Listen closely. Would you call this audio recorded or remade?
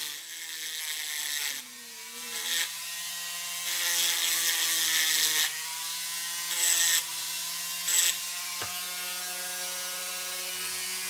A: recorded